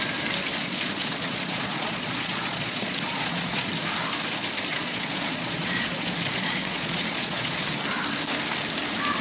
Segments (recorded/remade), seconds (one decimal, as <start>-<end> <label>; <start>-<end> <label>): 0.0-0.6 recorded; 0.6-3.7 remade; 3.7-4.7 recorded; 4.7-7.6 remade; 7.6-9.2 recorded